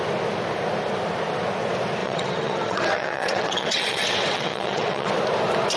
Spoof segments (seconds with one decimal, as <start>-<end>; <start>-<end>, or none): 2.0-5.1